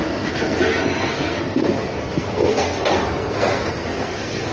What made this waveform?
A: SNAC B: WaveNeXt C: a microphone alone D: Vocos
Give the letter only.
A